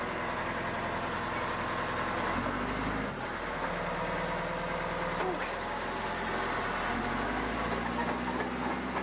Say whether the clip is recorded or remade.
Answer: recorded